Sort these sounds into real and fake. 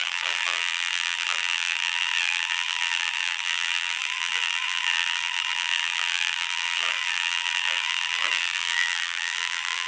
fake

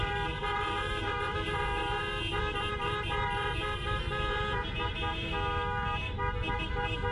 fake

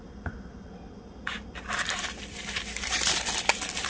fake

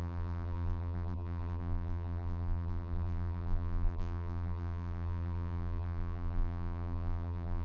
fake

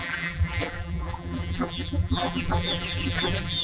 fake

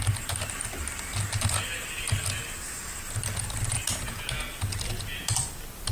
real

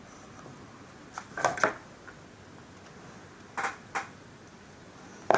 real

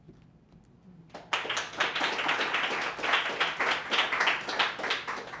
real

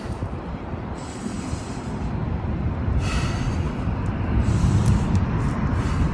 fake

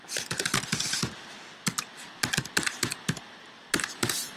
real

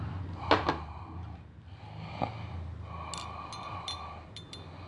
real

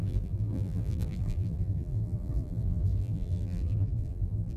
fake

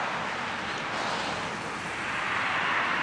real